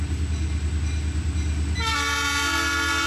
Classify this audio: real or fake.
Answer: real